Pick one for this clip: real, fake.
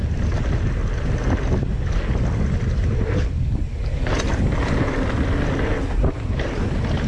real